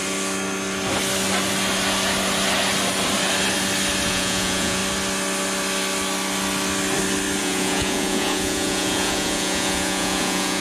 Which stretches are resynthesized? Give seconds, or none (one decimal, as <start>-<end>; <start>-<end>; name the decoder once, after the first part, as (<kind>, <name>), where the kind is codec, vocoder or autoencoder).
4.1-4.8 (vocoder, Vocos); 7.4-10.6